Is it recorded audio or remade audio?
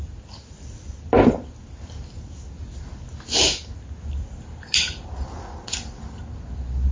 recorded